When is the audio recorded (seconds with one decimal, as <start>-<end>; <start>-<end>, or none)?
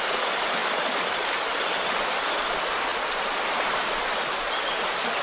0.0-0.6; 1.8-5.2